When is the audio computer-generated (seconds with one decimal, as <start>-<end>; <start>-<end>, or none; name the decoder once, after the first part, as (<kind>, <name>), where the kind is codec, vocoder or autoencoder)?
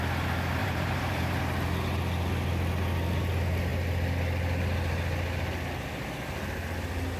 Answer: 0.6-1.4 (vocoder, BigVGAN v2)